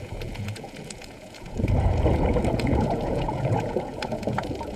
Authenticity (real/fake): fake